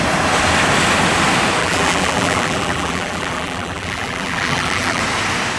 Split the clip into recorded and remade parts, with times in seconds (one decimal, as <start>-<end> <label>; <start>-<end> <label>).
0.0-1.6 recorded; 1.6-5.0 remade; 5.0-5.6 recorded

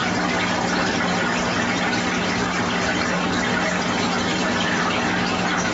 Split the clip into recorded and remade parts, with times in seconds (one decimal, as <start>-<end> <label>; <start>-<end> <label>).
0.0-4.3 recorded; 4.3-4.8 remade; 4.8-5.7 recorded

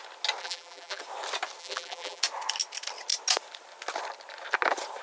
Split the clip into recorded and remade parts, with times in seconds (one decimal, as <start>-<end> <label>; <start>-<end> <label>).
0.0-0.4 recorded; 0.4-1.0 remade; 1.0-1.6 recorded; 1.6-2.2 remade; 2.2-5.0 recorded

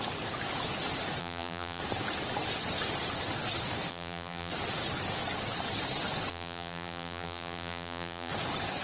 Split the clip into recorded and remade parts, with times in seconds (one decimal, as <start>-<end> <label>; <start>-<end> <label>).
0.0-1.2 recorded; 1.2-1.8 remade; 1.8-3.9 recorded; 3.9-4.5 remade; 4.5-6.3 recorded; 6.3-8.3 remade; 8.3-8.8 recorded

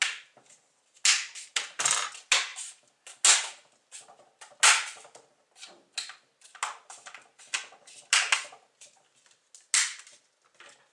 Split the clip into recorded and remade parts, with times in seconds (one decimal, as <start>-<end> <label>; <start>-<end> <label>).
0.0-10.9 recorded

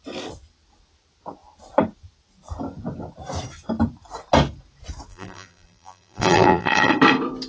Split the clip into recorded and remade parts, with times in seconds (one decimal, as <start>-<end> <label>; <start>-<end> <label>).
0.0-5.1 recorded; 5.1-6.9 remade; 6.9-7.5 recorded

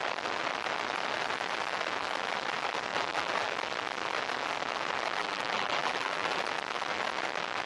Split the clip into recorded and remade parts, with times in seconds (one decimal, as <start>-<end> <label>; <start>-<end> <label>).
0.0-2.9 recorded; 2.9-3.5 remade; 3.5-5.2 recorded; 5.2-6.4 remade; 6.4-7.7 recorded

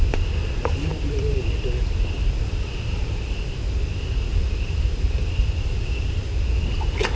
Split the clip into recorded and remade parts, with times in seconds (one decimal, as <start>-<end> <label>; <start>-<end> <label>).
0.0-0.9 recorded; 0.9-3.7 remade; 3.7-4.3 recorded; 4.3-6.2 remade; 6.2-7.2 recorded